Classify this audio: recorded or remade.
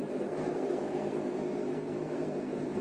remade